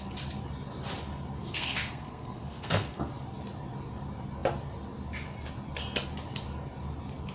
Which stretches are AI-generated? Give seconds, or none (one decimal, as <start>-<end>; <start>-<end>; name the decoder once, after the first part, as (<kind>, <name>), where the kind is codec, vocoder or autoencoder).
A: 1.4-3.1 (codec, SNAC)

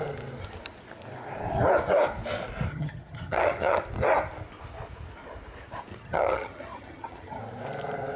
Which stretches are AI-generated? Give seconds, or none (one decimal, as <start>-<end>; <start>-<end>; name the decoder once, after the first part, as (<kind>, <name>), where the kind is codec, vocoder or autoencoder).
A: 2.7-3.8 (vocoder, HiFi-GAN); 5.9-7.4

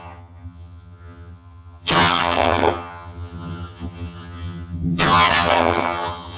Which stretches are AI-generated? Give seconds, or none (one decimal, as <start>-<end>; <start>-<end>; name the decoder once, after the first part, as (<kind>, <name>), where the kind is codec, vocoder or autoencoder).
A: 0.0-6.4 (vocoder, HiFi-GAN)

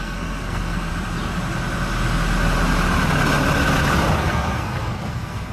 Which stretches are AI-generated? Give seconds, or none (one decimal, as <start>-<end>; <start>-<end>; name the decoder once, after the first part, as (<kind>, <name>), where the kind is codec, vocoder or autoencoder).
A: 0.0-0.9 (codec, SNAC); 4.2-5.5

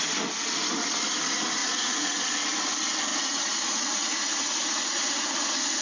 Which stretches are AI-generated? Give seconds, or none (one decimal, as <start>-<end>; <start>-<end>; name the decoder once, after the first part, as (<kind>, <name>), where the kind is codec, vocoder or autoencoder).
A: 1.6-2.2 (vocoder, Vocos); 3.1-5.8

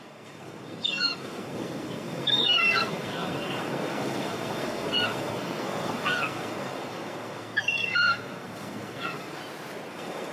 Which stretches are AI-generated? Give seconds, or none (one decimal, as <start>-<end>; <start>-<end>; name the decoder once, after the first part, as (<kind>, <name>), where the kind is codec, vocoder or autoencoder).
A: 0.0-9.4 (codec, SNAC); 9.9-10.3